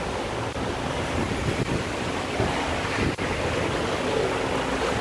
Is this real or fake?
real